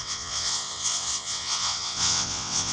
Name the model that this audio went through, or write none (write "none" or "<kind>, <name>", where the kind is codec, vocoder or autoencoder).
vocoder, WaveNeXt